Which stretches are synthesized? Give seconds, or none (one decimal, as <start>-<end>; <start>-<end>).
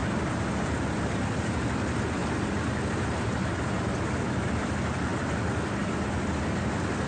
none